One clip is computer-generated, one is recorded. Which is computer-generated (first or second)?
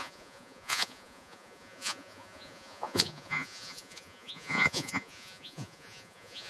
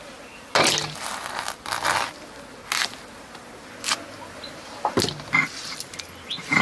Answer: first